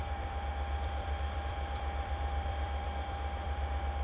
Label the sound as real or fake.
fake